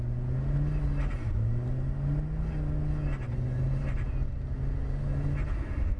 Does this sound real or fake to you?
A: real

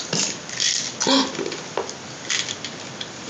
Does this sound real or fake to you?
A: real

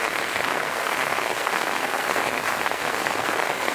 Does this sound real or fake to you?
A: fake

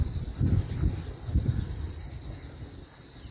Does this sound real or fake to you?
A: real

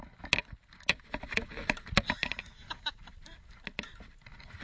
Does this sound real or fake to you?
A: real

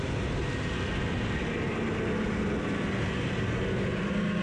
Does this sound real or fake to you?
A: real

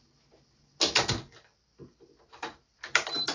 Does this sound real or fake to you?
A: real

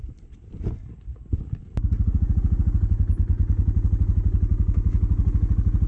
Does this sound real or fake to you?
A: real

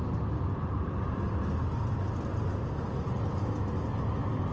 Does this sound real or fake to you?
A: real